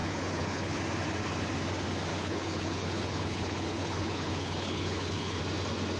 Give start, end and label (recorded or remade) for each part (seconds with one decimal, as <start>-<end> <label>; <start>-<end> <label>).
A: 0.0-0.8 remade; 0.8-2.1 recorded; 2.1-5.4 remade; 5.4-6.0 recorded

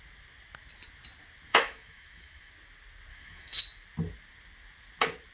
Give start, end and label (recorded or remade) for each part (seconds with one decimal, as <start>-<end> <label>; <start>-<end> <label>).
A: 0.0-1.5 recorded; 1.5-2.5 remade; 2.5-3.1 recorded; 3.1-3.6 remade; 3.6-5.3 recorded